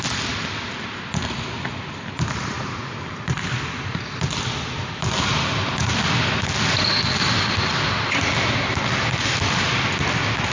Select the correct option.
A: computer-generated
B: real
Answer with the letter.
B